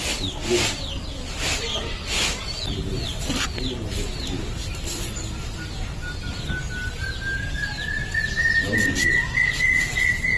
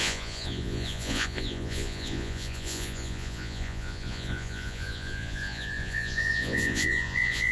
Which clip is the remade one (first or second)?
second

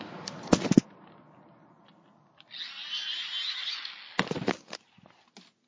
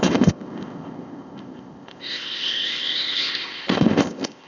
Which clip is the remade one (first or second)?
second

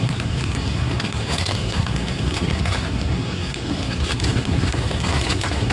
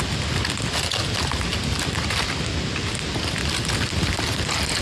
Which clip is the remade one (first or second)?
first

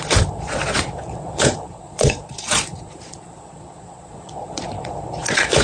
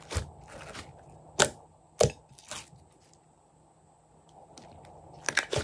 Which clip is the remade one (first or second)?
first